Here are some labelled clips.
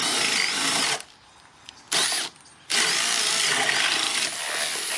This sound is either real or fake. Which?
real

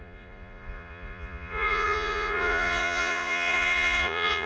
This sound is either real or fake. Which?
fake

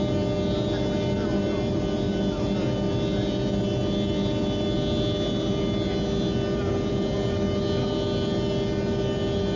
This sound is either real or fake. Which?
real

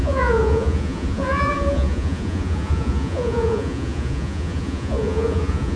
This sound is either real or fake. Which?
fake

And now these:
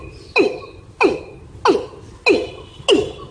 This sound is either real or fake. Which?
real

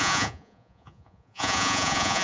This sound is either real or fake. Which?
fake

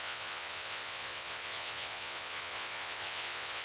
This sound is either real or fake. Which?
fake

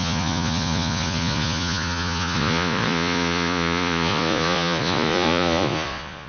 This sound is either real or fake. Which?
fake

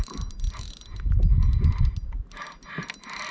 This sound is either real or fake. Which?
real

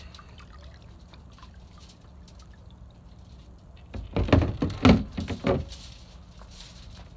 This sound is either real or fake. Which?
real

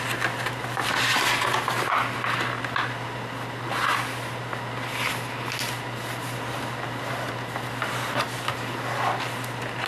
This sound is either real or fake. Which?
real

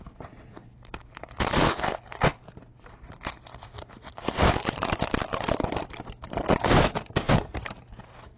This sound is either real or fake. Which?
real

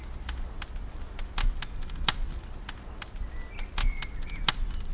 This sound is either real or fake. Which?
real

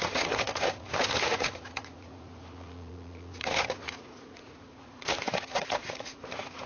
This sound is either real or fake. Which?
fake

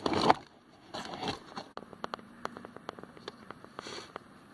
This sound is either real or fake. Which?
real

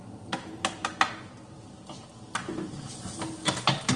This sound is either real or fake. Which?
real